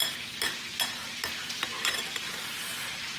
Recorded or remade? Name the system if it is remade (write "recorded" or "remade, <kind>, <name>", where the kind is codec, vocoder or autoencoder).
recorded